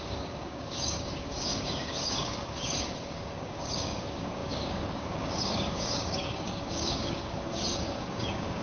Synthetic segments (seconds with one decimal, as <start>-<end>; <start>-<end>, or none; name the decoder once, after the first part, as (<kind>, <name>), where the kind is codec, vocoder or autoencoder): 0.0-8.6 (codec, DAC)